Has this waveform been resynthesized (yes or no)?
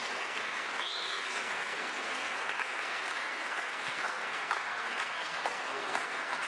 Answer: yes